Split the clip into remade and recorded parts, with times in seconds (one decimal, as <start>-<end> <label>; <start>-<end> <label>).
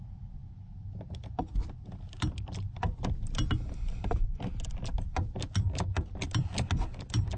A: 0.0-7.4 recorded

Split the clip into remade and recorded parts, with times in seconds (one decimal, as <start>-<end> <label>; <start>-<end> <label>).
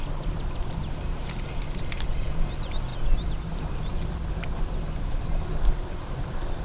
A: 0.0-6.6 recorded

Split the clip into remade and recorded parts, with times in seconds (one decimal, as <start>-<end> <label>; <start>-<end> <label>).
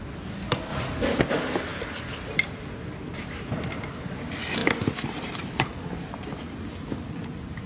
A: 0.0-4.6 recorded; 4.6-5.3 remade; 5.3-7.7 recorded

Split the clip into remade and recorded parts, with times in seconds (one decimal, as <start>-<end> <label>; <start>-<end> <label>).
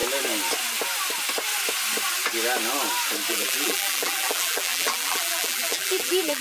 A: 0.0-3.3 recorded; 3.3-6.4 remade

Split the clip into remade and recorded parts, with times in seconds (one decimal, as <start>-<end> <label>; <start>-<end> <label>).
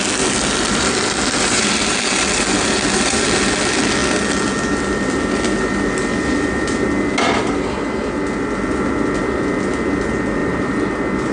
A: 0.0-10.4 recorded; 10.4-10.9 remade; 10.9-11.3 recorded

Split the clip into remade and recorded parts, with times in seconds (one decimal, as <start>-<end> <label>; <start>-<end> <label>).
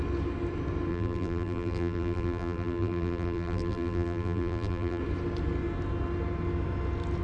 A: 0.0-0.9 recorded; 0.9-5.0 remade; 5.0-7.2 recorded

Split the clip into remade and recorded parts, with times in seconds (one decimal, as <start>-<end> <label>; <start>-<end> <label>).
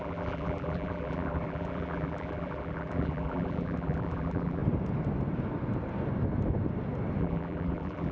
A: 0.0-4.6 remade; 4.6-7.2 recorded; 7.2-8.1 remade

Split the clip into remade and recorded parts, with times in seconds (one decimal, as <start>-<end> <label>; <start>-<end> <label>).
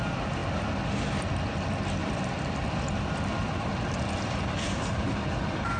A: 0.0-2.0 recorded; 2.0-5.8 remade